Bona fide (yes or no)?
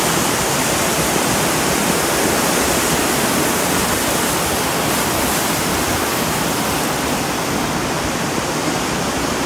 yes